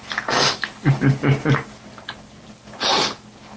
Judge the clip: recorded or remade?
recorded